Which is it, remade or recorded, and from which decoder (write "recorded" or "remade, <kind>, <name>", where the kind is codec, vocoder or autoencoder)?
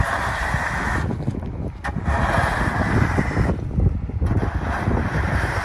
recorded